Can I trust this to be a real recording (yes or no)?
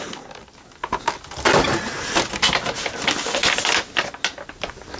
yes